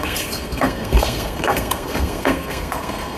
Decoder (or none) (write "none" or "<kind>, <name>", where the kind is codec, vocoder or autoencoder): codec, SNAC